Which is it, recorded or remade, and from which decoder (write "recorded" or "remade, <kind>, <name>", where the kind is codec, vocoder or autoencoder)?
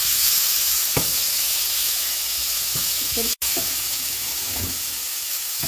remade, autoencoder, DAC-VAE